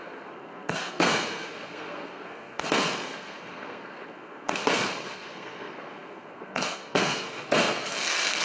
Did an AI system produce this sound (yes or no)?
yes